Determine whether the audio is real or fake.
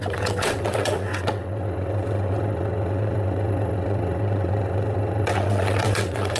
fake